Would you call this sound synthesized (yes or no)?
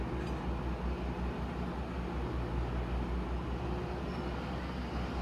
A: no